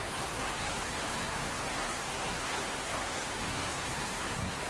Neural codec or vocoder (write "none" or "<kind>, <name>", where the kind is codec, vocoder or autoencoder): codec, SNAC